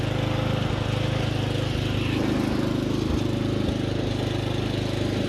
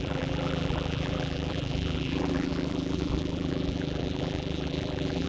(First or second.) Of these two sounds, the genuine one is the first